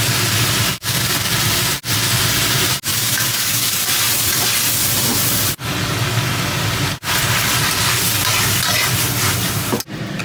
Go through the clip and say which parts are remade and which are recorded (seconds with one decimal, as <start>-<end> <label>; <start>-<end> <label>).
0.0-0.7 recorded; 0.7-1.3 remade; 1.3-2.9 recorded; 2.9-3.9 remade; 3.9-10.2 recorded